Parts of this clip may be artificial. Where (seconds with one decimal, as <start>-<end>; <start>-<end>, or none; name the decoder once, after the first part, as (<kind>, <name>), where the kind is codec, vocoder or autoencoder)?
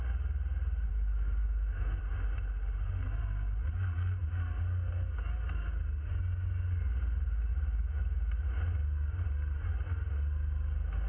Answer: 0.9-2.0 (autoencoder, DAC-VAE); 7.5-8.5